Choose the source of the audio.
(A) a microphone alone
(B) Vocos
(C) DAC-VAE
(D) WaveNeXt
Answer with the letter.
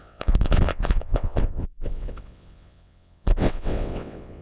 D